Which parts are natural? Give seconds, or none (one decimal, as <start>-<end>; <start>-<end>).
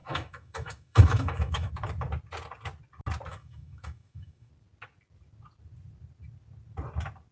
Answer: 1.7-3.3; 4.5-7.3